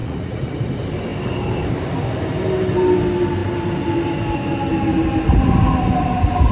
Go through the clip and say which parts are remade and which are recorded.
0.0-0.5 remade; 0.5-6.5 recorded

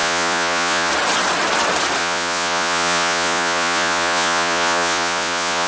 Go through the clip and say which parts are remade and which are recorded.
0.0-0.9 remade; 0.9-2.0 recorded; 2.0-5.7 remade